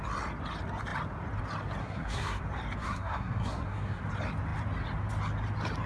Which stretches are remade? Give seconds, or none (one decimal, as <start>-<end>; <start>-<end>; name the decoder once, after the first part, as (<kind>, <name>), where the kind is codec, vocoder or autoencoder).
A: 1.8-2.4 (codec, SNAC); 2.8-4.0